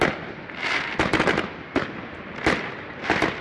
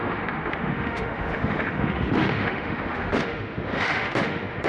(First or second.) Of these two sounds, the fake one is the second